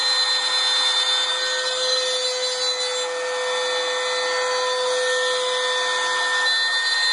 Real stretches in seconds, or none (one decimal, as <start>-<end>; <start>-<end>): 0.0-7.1